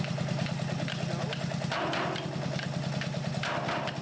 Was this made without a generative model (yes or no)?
yes